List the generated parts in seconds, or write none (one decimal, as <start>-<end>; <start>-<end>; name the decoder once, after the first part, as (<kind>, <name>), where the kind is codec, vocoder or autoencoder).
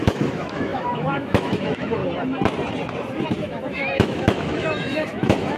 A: 0.0-2.0 (autoencoder, DAC-VAE); 3.2-5.6